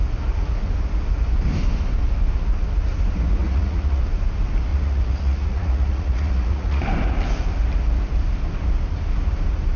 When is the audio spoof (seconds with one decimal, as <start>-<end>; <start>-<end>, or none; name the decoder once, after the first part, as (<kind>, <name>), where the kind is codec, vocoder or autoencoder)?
3.4-4.0 (vocoder, Vocos); 4.7-6.8